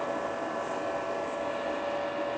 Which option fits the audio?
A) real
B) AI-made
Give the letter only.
A